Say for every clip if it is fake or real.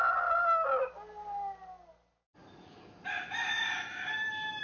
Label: real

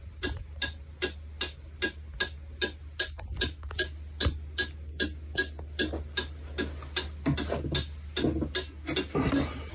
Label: real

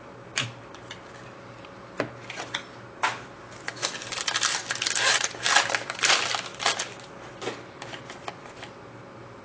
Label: real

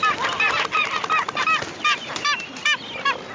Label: real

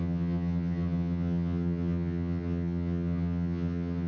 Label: fake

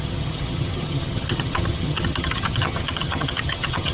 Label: fake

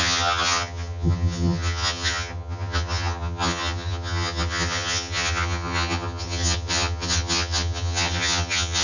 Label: fake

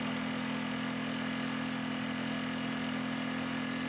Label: real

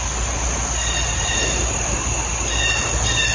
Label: real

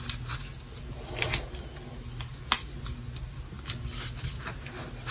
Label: real